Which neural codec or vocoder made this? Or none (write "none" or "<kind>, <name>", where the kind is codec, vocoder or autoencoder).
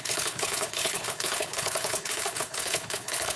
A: codec, HILCodec